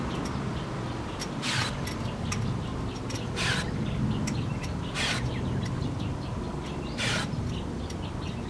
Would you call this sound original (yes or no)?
yes